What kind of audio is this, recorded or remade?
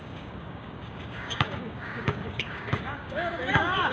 remade